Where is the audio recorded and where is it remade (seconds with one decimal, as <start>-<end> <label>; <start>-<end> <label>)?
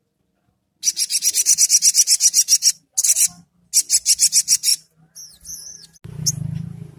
0.0-7.0 recorded